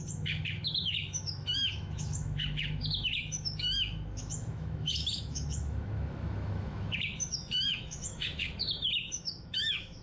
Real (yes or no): no